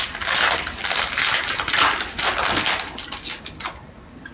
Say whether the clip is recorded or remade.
recorded